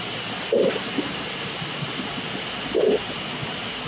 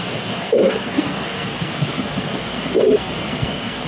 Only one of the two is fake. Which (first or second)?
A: second